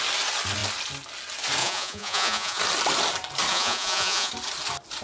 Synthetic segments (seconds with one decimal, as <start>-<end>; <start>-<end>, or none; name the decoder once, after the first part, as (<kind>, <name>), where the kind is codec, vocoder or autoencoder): 1.6-2.6 (vocoder, Vocos); 3.5-4.3